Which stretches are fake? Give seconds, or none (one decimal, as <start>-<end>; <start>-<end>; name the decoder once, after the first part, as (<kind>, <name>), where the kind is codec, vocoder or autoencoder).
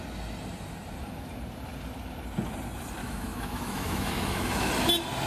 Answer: 3.0-4.7 (autoencoder, DAC-VAE)